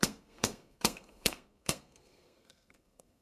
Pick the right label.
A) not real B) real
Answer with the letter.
A